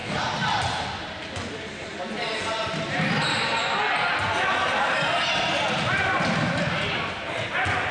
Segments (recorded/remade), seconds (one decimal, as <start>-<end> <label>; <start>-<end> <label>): 0.0-7.9 recorded